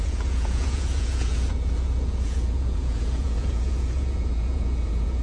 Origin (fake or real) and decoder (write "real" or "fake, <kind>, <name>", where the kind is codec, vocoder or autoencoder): fake, vocoder, Vocos